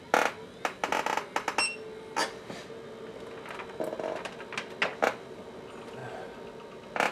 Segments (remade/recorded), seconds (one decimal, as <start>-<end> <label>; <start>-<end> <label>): 0.0-7.1 recorded